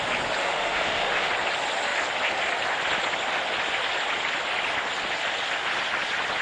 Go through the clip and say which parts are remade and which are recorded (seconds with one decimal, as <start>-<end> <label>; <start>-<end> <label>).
0.0-0.4 recorded; 0.4-1.3 remade; 1.3-6.4 recorded